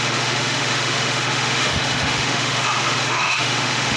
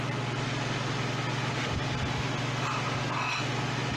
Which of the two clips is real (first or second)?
second